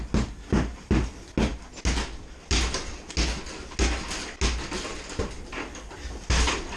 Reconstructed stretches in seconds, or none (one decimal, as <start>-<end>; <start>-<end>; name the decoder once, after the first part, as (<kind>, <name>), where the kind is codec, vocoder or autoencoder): none